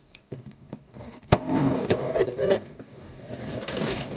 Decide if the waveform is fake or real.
fake